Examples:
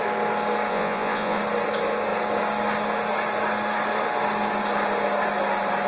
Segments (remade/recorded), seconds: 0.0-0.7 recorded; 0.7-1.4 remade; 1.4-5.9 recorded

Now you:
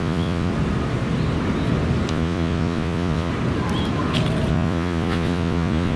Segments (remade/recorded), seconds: 0.0-0.5 remade; 0.5-2.1 recorded; 2.1-3.3 remade; 3.3-4.5 recorded; 4.5-6.0 remade

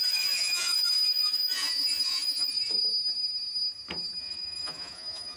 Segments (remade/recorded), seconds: 0.0-2.8 remade; 2.8-4.2 recorded; 4.2-5.4 remade